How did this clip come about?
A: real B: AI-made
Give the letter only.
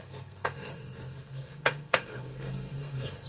B